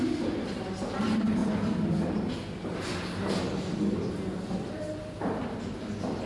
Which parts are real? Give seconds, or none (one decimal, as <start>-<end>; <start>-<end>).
0.0-6.3